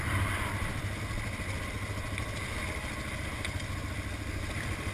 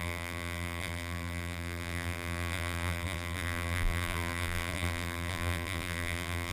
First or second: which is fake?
second